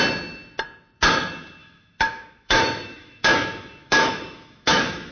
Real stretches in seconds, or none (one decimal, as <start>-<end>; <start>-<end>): 0.0-1.6